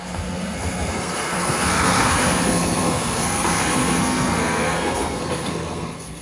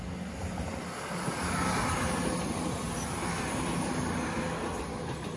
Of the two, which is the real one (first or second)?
second